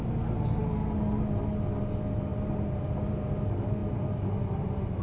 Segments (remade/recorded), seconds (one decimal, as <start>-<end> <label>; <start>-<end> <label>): 0.0-3.8 recorded; 3.8-5.0 remade